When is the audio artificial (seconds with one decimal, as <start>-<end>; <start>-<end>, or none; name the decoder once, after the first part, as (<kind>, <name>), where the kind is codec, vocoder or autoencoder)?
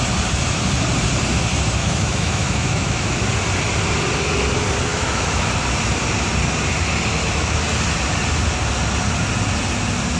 1.8-3.3 (autoencoder, DAC-VAE); 4.9-5.4; 7.1-7.6